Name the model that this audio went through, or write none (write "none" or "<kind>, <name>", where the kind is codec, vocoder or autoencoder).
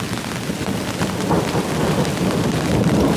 none